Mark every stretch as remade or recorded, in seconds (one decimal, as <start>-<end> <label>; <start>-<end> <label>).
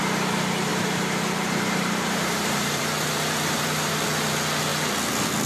0.0-0.7 recorded; 0.7-3.9 remade; 3.9-5.5 recorded